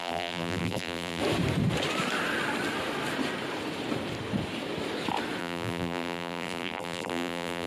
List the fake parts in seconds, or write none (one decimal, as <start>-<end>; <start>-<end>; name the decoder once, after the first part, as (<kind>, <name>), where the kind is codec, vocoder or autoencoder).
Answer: 0.0-1.2 (vocoder, BigVGAN v2); 5.4-7.7